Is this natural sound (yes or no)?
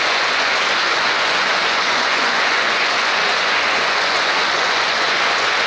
no